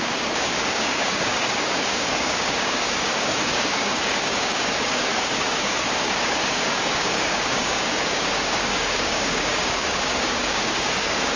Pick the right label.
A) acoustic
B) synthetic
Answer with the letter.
B